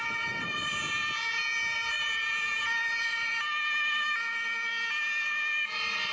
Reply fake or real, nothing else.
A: real